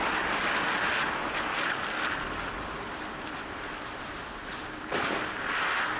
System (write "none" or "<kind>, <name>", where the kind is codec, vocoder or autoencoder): none